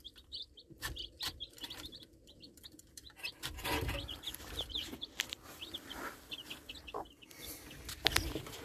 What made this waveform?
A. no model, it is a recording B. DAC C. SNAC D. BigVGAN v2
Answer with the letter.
D